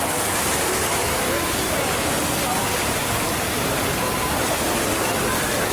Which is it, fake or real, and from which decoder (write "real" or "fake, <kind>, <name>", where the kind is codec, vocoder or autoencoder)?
real